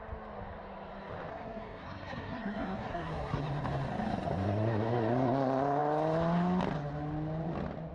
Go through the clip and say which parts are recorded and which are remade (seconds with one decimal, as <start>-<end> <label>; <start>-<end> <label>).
0.0-1.3 recorded; 1.3-3.4 remade; 3.4-7.9 recorded